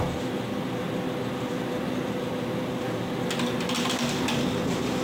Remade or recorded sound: recorded